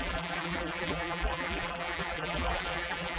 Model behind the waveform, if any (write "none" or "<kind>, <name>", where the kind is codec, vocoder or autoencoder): vocoder, BigVGAN v2